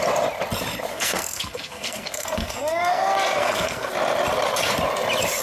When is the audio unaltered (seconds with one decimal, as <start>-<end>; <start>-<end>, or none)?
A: 0.0-0.9; 3.9-5.4